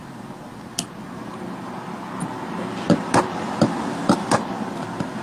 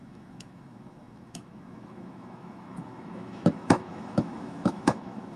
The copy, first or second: second